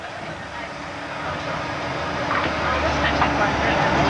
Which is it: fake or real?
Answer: real